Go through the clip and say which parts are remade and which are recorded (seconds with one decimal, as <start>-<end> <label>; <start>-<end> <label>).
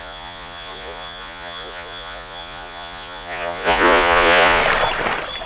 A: 0.0-4.6 remade; 4.6-5.5 recorded